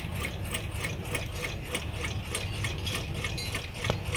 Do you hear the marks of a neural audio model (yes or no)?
no